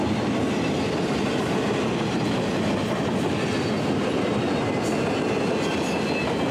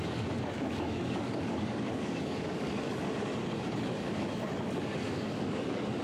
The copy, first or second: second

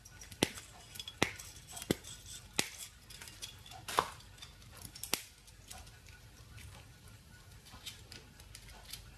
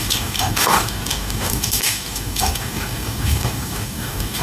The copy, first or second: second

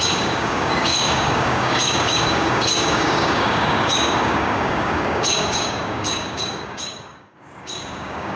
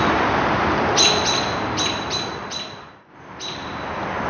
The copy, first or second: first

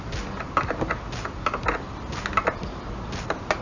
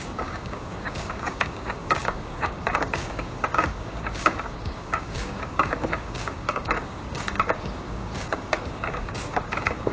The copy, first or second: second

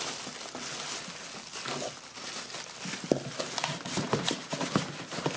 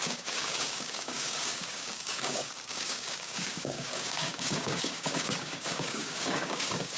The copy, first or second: second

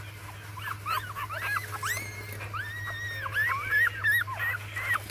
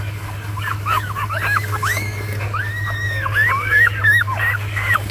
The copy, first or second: second